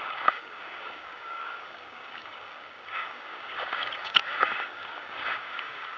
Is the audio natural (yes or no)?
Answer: no